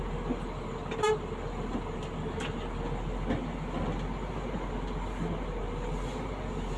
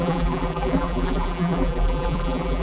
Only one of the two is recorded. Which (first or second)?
first